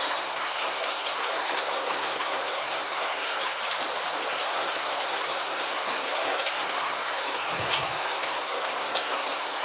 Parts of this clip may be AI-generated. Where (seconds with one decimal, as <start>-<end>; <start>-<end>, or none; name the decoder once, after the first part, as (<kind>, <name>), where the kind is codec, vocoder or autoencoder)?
0.0-3.6 (codec, SNAC); 4.3-9.6